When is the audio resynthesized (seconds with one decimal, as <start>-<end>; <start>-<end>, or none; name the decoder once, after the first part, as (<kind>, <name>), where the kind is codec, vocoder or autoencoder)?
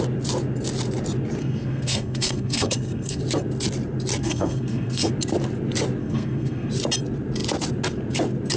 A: 1.4-3.2 (codec, SNAC); 4.2-5.1; 6.0-6.7